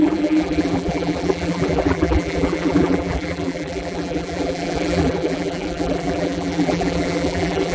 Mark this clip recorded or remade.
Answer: remade